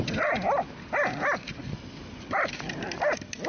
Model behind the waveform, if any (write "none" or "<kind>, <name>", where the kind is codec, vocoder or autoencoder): none